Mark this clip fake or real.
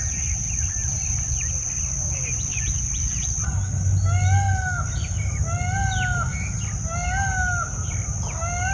real